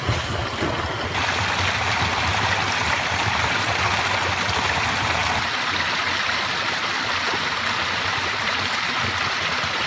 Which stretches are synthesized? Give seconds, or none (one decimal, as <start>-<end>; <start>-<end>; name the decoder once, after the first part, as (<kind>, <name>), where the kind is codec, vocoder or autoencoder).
none